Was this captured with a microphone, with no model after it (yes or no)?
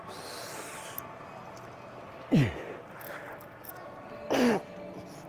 yes